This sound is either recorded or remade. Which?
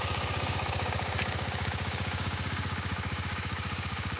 remade